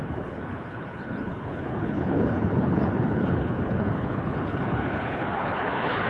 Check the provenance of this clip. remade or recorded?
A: remade